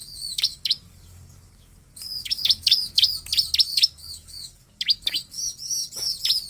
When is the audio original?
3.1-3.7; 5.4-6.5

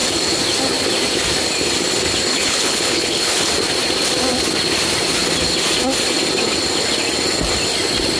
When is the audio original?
0.0-2.3; 3.5-8.2

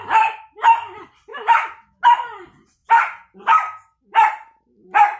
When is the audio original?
0.0-1.3; 2.0-5.2

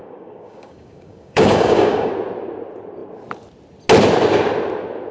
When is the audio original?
2.1-5.1

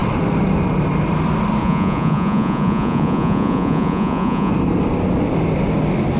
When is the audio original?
0.0-1.6; 4.5-6.2